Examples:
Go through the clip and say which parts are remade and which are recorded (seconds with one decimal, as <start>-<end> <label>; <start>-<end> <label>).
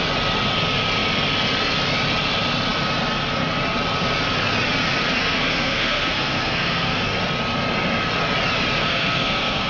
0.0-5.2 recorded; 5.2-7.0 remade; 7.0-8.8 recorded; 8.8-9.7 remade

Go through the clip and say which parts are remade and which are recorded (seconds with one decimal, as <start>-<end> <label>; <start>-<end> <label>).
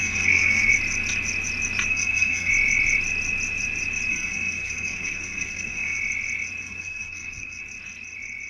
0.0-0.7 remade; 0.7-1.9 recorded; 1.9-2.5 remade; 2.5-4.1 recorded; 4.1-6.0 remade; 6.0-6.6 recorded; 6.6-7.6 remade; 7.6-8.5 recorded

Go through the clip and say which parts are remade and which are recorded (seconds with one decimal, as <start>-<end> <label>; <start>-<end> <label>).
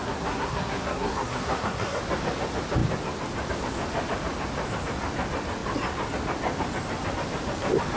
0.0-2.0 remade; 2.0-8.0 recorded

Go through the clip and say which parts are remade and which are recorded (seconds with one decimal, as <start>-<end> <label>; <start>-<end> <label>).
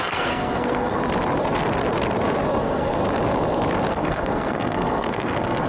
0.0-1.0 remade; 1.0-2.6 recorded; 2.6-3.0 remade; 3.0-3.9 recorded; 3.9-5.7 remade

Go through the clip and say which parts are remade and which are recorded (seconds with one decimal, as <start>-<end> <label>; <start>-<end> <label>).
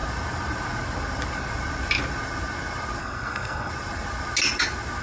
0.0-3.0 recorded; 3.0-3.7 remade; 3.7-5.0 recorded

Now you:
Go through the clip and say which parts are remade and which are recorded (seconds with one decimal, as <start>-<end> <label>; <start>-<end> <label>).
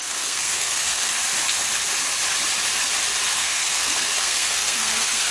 0.0-1.1 remade; 1.1-3.3 recorded; 3.3-5.3 remade